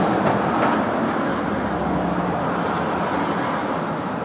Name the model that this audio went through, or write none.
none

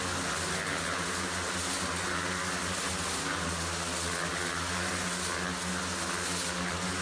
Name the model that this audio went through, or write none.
none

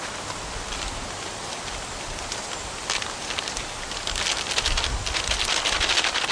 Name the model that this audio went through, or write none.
none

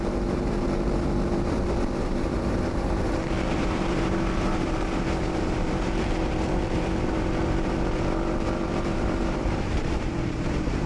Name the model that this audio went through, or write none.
vocoder, BigVGAN v2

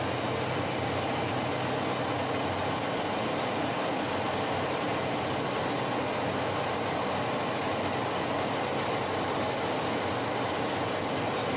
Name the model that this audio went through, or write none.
none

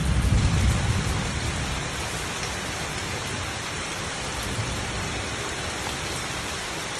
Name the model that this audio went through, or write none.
vocoder, BigVGAN v2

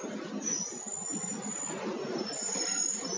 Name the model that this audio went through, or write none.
none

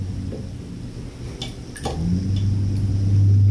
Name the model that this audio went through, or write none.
none